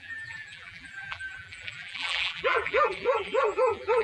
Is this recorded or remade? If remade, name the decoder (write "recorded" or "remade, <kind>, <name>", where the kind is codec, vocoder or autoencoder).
remade, vocoder, BigVGAN v2